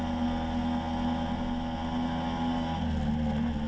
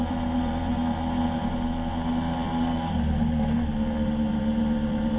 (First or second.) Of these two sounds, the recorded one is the first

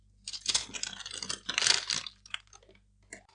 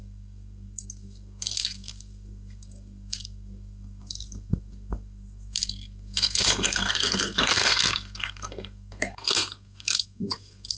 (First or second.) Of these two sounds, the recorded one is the first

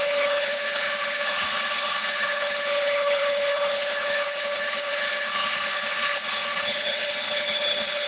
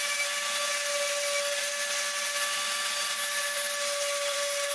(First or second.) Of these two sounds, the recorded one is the second